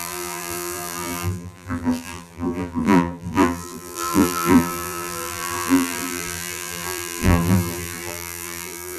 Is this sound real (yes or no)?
no